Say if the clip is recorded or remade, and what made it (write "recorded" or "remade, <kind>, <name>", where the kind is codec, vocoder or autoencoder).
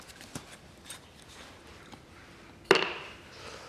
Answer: recorded